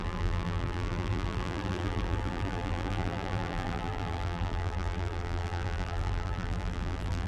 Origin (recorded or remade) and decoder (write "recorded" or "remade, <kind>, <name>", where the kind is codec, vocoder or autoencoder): remade, vocoder, BigVGAN v2